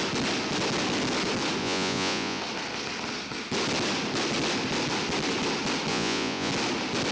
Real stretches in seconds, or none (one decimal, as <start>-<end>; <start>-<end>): 0.0-1.6; 2.4-5.9; 6.5-7.1